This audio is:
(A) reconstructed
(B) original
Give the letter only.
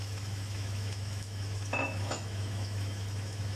A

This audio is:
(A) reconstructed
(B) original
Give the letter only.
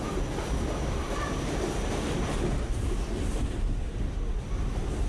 B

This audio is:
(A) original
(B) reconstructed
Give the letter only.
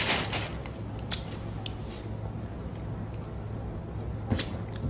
A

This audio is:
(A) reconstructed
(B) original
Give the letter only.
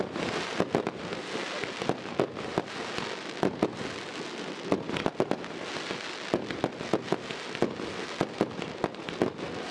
B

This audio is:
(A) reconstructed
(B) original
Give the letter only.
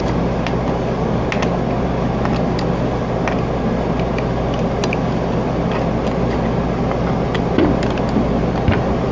B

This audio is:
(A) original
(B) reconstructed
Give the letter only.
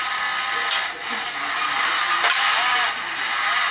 A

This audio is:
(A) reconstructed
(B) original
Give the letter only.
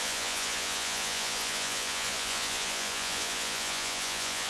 A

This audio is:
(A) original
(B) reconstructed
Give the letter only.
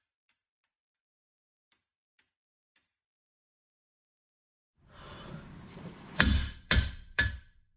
B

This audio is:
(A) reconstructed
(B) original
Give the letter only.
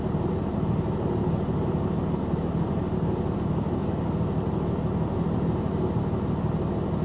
B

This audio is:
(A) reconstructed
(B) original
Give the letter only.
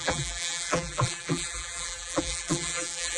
A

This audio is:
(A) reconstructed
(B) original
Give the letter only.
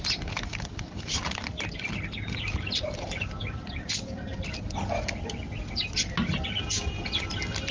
B